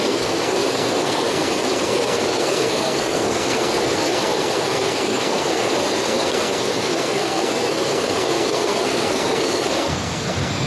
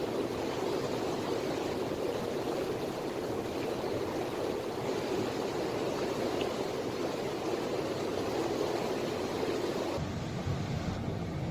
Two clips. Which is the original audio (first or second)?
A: second